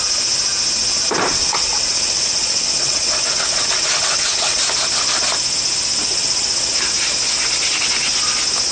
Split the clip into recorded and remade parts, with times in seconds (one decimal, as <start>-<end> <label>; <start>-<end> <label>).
0.0-1.3 recorded; 1.3-4.6 remade; 4.6-6.1 recorded; 6.1-6.7 remade; 6.7-8.7 recorded